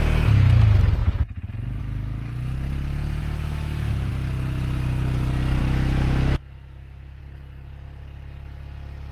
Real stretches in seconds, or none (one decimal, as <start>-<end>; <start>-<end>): 0.0-3.2; 4.1-5.6; 7.2-9.1